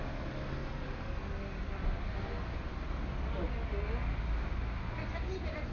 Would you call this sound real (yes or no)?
yes